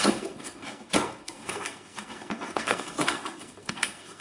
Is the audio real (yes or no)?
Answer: no